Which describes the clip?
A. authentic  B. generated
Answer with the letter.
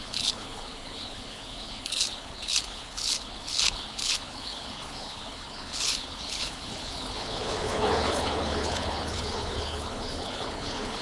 B